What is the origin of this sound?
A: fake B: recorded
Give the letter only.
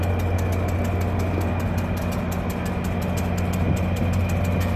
B